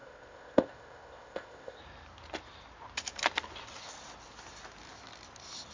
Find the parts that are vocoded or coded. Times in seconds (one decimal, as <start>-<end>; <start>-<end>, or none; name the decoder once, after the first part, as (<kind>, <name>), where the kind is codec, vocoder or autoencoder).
0.0-1.8 (codec, ZipCodec)